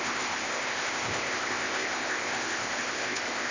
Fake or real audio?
fake